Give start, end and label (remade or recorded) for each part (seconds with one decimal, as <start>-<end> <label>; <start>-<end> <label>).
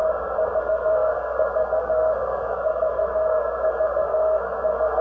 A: 0.0-0.6 recorded; 0.6-5.0 remade